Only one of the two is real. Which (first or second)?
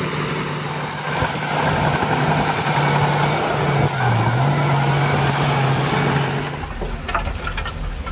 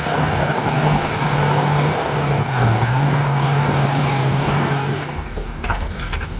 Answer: first